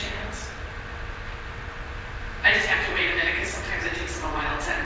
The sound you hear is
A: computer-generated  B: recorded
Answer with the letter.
A